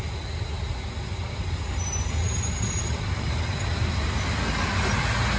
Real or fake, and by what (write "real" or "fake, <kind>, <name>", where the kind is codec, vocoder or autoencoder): real